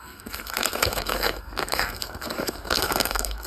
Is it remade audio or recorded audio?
remade